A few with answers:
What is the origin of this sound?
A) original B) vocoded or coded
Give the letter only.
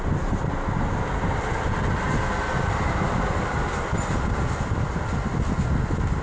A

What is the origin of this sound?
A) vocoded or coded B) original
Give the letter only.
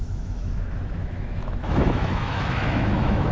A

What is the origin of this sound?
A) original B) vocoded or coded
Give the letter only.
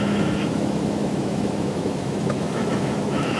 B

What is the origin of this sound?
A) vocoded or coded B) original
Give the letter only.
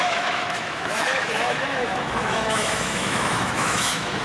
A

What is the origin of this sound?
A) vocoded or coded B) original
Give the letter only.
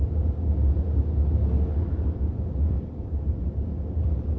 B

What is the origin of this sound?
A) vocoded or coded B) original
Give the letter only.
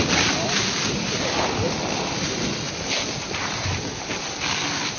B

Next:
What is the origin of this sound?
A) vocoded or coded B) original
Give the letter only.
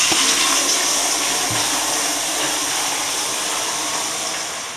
B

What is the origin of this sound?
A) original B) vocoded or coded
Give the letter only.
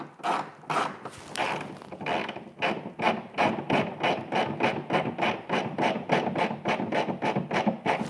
A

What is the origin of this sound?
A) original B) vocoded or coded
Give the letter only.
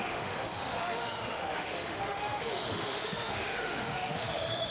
B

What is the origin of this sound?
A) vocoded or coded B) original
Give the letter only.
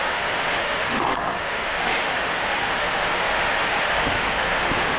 A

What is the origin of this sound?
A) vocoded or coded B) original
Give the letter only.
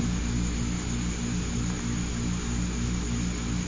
B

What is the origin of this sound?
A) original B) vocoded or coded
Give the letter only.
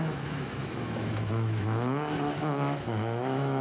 B